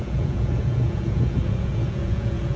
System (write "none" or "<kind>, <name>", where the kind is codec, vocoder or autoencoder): vocoder, Vocos